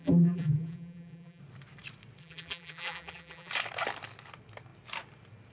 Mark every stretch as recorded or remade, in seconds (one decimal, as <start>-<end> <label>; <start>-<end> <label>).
0.0-1.4 remade; 1.4-2.2 recorded; 2.2-3.5 remade; 3.5-5.5 recorded

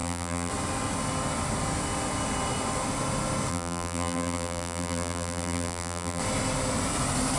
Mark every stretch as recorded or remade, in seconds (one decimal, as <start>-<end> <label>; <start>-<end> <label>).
0.0-0.5 remade; 0.5-3.5 recorded; 3.5-6.2 remade; 6.2-7.4 recorded

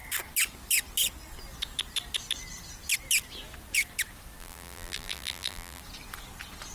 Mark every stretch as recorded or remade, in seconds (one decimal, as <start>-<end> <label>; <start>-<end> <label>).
0.0-4.4 recorded; 4.4-5.8 remade; 5.8-6.7 recorded